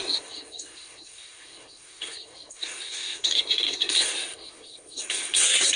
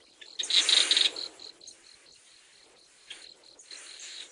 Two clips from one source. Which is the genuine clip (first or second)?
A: second